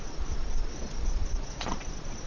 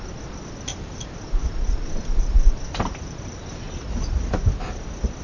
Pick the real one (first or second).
second